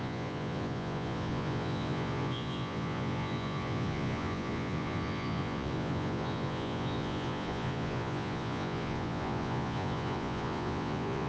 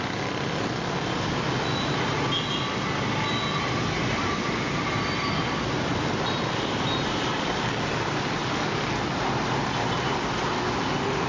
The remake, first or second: first